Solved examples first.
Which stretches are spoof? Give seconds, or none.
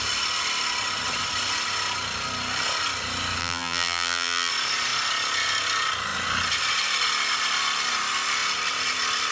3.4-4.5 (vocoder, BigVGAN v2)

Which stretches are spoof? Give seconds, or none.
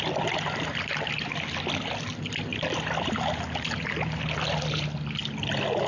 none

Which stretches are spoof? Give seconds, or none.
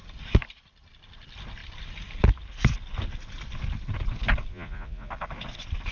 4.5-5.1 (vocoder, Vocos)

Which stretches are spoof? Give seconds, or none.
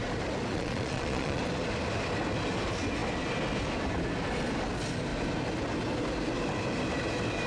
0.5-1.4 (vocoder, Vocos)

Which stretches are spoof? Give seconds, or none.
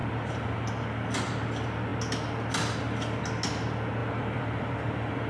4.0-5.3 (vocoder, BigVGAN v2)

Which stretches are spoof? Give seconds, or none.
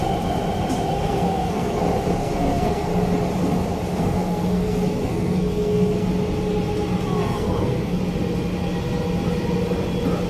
0.9-1.8 (codec, SNAC); 2.2-2.9; 3.9-6.1; 7.2-8.0